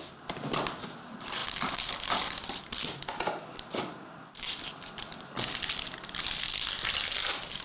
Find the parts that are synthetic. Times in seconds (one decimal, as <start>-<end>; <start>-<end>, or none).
none